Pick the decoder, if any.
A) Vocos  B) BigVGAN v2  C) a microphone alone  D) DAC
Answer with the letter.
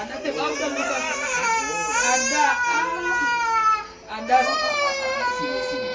C